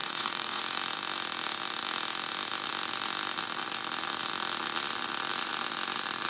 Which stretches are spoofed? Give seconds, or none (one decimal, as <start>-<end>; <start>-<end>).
0.0-0.6